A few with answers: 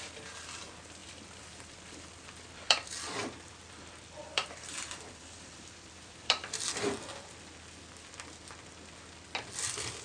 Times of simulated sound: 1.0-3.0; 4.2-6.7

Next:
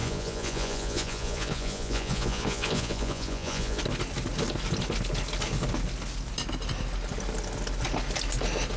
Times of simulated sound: 0.0-3.8

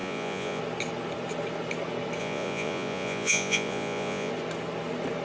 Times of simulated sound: 0.0-0.6; 2.2-4.3

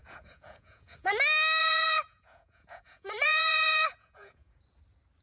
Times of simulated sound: 0.0-1.1; 1.6-4.6

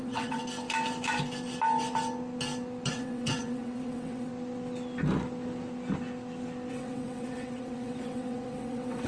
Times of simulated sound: 0.0-0.4; 2.9-4.3; 6.7-9.1

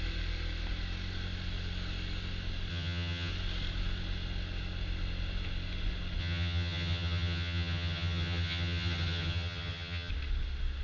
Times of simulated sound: 2.7-3.3; 6.2-10.1